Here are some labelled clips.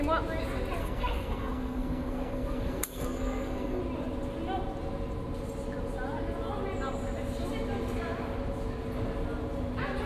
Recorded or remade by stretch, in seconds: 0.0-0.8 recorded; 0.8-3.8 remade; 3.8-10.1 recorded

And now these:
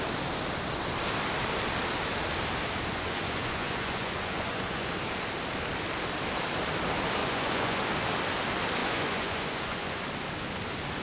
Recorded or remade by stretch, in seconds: 0.0-2.9 recorded; 2.9-4.9 remade; 4.9-7.2 recorded; 7.2-7.8 remade; 7.8-8.8 recorded; 8.8-10.0 remade; 10.0-11.0 recorded